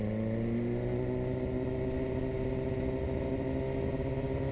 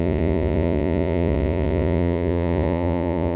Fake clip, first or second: second